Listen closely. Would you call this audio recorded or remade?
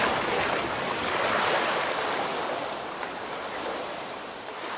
remade